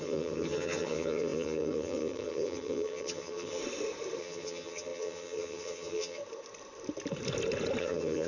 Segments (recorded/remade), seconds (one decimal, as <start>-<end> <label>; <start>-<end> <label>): 0.0-3.6 remade; 3.6-4.2 recorded; 4.2-6.2 remade; 6.2-7.8 recorded; 7.8-8.3 remade